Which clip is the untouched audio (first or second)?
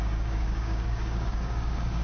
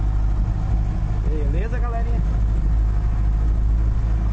second